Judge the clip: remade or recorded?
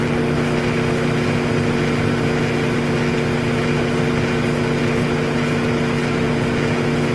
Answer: recorded